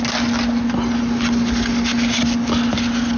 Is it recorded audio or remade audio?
recorded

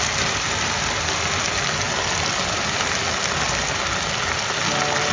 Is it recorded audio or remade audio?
recorded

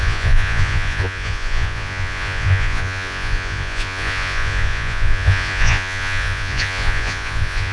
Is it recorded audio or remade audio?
remade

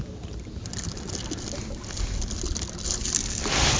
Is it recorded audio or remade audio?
recorded